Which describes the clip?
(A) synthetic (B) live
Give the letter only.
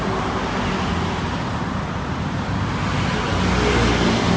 B